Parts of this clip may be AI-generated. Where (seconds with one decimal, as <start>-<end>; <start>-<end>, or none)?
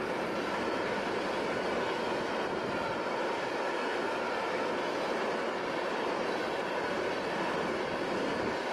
none